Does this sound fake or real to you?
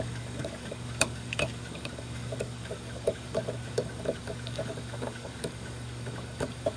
fake